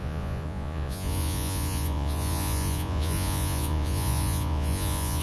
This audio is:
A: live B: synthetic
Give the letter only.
B